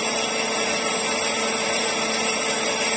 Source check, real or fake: real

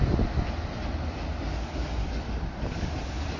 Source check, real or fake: real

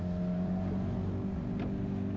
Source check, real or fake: real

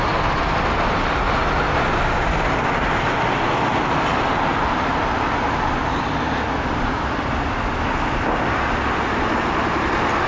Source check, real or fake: real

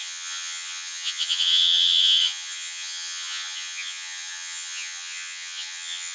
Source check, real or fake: fake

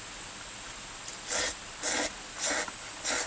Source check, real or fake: real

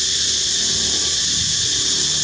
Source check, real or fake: real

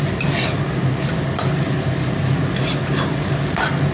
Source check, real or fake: real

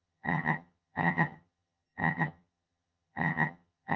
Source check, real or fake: fake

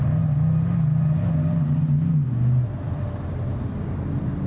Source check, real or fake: real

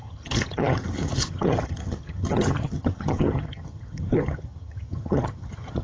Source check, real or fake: fake